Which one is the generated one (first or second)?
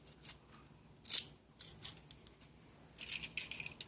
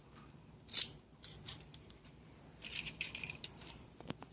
second